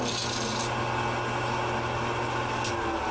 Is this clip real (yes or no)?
yes